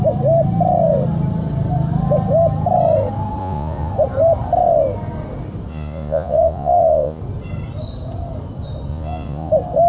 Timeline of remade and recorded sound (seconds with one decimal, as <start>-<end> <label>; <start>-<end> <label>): 0.0-3.4 recorded; 3.4-3.9 remade; 3.9-5.7 recorded; 5.7-7.2 remade; 7.2-8.9 recorded; 8.9-9.5 remade; 9.5-9.9 recorded